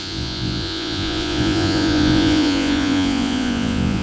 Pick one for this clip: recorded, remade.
remade